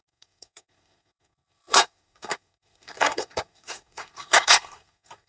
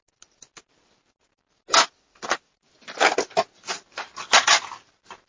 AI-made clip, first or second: first